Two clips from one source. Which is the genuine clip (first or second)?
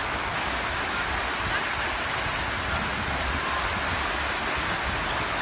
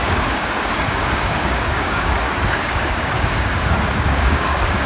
first